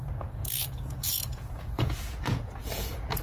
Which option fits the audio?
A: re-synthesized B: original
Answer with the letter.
A